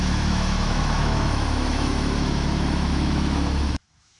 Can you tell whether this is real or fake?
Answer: fake